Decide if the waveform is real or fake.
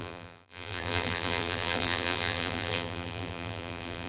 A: fake